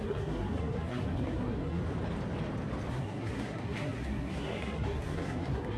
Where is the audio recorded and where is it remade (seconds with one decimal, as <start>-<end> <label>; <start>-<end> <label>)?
0.0-1.8 remade; 1.8-2.9 recorded; 2.9-5.8 remade